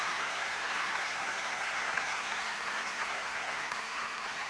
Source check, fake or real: fake